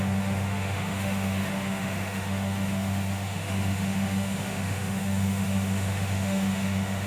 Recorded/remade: remade